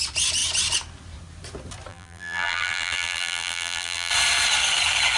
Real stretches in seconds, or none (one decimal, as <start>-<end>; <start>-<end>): 0.0-1.9; 4.1-5.2